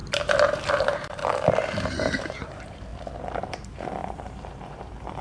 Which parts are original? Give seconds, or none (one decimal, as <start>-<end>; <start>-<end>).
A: 1.2-1.8; 2.9-3.5